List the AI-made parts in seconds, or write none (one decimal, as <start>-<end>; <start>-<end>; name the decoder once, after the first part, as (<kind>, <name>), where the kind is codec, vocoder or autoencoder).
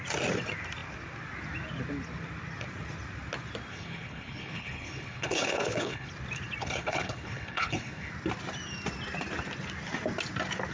3.7-6.1 (codec, HILCodec); 6.6-8.1